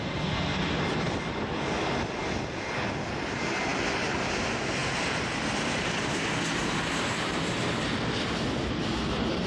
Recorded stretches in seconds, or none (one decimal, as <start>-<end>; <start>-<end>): 0.0-4.8; 7.8-9.5